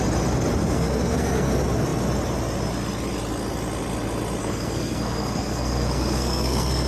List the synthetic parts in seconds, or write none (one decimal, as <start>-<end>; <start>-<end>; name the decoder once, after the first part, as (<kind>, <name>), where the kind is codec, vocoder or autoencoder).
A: 0.6-1.5 (codec, SNAC); 4.4-6.9